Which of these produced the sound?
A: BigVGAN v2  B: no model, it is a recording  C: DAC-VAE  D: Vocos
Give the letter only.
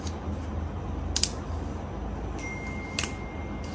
B